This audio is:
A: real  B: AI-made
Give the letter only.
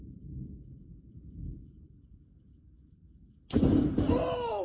B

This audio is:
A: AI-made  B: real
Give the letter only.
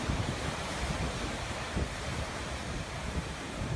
A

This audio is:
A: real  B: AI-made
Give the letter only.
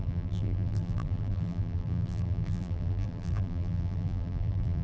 B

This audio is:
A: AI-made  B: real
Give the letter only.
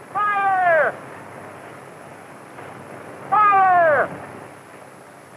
B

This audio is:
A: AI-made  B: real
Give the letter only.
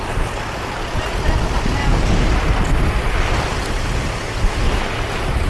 B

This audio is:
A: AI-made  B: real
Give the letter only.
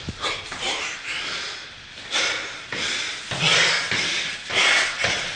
B